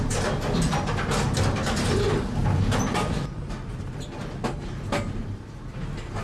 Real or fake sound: real